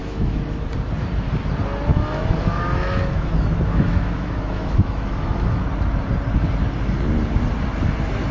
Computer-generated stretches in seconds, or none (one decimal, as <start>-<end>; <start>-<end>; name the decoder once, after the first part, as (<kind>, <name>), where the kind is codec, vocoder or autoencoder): 0.0-0.6 (autoencoder, DAC-VAE); 1.9-5.6